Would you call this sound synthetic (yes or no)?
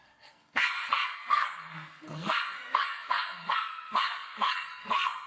yes